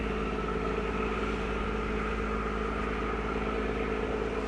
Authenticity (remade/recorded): recorded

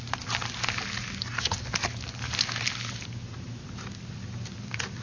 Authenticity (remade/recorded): recorded